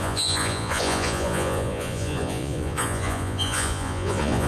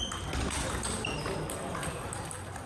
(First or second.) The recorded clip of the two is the second